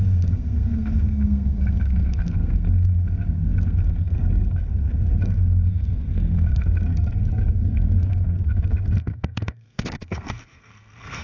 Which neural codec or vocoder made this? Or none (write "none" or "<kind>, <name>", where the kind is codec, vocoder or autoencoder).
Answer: codec, SNAC